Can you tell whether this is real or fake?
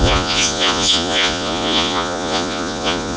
fake